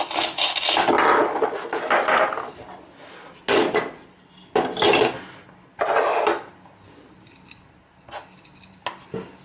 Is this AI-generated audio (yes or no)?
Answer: no